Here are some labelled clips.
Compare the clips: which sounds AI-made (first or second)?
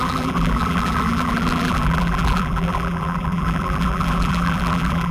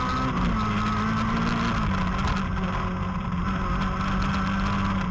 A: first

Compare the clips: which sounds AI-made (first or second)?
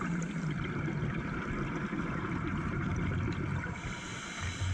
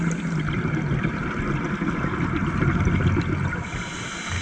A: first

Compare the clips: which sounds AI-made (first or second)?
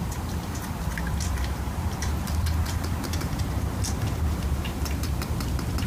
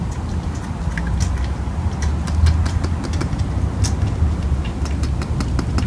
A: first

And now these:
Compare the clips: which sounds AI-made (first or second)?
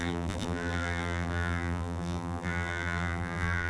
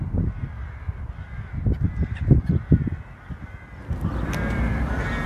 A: first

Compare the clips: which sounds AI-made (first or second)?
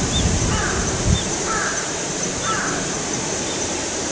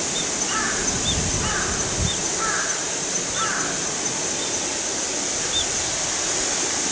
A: first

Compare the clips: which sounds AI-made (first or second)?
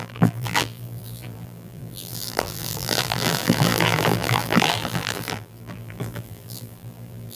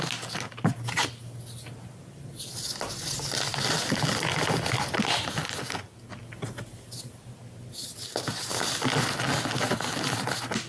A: first